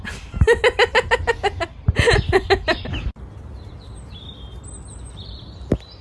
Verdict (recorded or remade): recorded